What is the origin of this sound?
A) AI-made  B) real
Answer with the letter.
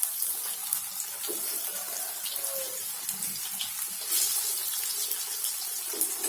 B